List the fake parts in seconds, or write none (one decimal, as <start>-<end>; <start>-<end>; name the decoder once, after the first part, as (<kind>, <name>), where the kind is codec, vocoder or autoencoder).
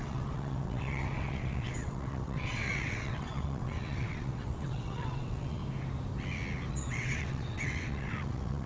0.0-5.6 (vocoder, WaveNeXt); 6.7-8.7